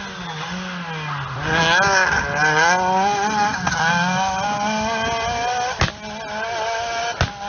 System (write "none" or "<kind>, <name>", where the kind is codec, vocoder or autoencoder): none